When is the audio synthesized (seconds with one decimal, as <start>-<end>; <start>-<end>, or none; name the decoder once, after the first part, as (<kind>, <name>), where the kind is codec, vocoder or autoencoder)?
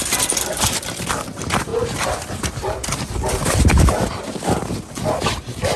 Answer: 0.0-1.7 (vocoder, BigVGAN v2); 5.2-5.8